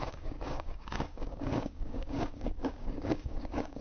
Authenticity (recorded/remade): remade